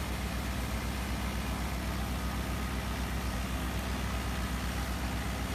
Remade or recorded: recorded